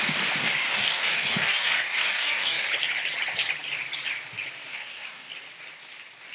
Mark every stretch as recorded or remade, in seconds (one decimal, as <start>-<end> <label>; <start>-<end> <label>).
0.0-0.4 recorded; 0.4-2.7 remade; 2.7-4.7 recorded; 4.7-5.3 remade; 5.3-6.3 recorded